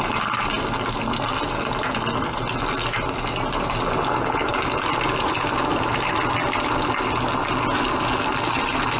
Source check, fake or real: real